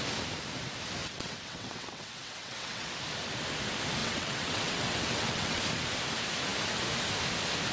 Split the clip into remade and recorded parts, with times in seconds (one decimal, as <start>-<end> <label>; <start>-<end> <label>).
0.0-1.0 recorded; 1.0-2.9 remade; 2.9-4.0 recorded; 4.0-5.6 remade; 5.6-7.7 recorded